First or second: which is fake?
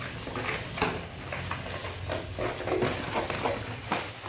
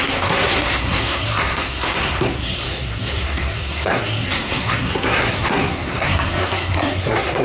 second